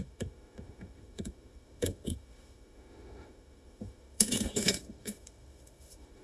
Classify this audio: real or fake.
fake